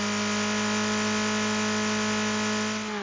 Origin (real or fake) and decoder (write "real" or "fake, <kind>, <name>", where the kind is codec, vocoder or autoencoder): real